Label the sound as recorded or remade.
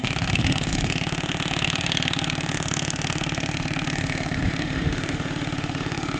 remade